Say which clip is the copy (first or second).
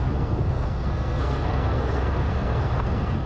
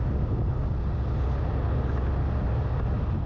first